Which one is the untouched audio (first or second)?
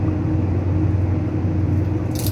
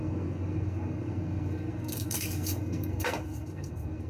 first